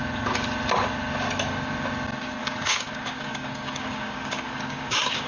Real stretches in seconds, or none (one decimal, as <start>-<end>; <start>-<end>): 0.0-2.4